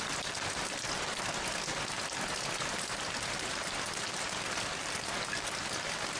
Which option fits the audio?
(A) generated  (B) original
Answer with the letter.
B